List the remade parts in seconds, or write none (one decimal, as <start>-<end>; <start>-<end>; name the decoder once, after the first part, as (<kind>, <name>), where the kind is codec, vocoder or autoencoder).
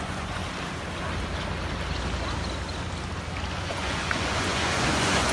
0.0-0.4 (vocoder, Vocos); 3.6-5.3